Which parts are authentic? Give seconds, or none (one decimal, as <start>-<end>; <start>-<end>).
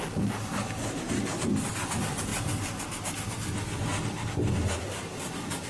0.0-5.7